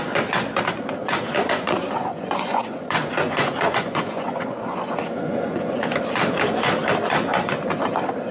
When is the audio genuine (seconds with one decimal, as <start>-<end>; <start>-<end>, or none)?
0.0-1.0; 6.0-8.3